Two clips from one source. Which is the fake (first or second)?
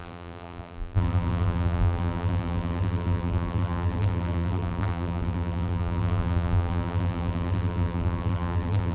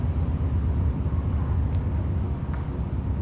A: first